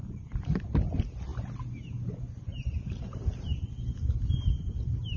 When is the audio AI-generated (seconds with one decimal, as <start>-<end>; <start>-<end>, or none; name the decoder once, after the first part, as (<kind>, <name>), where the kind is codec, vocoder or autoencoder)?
none